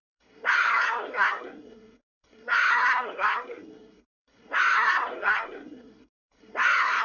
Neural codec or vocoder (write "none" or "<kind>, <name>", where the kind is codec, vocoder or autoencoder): codec, SNAC